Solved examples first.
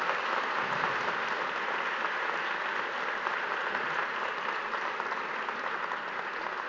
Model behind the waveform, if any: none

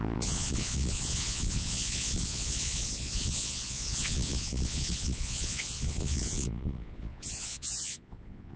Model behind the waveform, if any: vocoder, Vocos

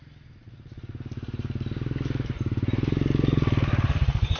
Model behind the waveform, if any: none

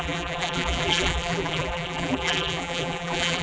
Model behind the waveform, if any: vocoder, BigVGAN v2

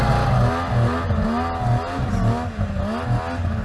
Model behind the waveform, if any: none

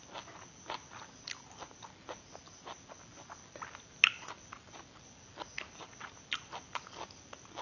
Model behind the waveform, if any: none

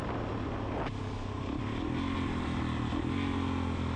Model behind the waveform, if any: none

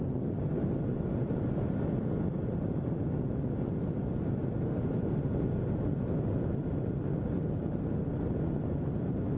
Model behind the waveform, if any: none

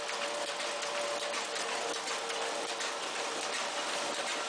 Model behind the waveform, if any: none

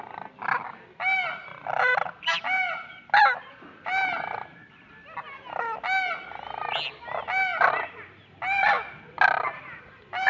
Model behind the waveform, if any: none